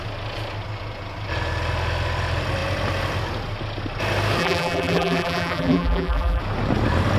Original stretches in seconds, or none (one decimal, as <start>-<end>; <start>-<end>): 0.0-4.4; 6.4-7.2